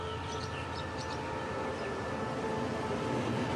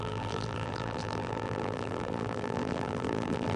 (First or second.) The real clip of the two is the first